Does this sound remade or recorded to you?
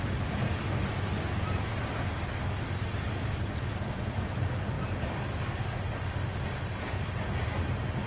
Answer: recorded